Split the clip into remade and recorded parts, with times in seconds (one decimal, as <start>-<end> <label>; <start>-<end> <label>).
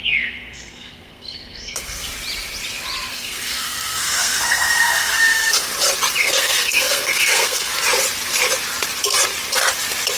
0.0-2.1 remade; 2.1-3.1 recorded; 3.1-5.7 remade; 5.7-6.2 recorded; 6.2-7.7 remade; 7.7-10.2 recorded